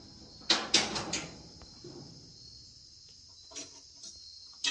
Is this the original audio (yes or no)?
yes